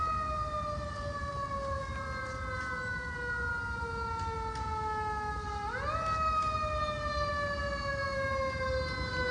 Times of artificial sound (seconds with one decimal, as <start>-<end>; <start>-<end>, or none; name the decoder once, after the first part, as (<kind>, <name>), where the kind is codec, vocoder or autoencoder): none

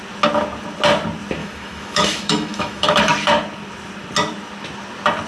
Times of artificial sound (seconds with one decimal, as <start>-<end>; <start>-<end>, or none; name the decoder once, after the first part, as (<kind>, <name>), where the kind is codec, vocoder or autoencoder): 1.4-3.0 (autoencoder, DAC-VAE)

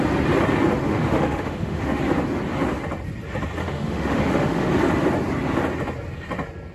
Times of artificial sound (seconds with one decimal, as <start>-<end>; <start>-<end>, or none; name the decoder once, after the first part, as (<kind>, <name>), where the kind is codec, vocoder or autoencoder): 0.9-2.0 (autoencoder, DAC-VAE); 3.6-4.7